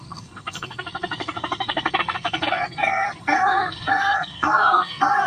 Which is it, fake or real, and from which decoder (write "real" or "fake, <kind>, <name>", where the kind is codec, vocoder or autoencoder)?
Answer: fake, codec, SNAC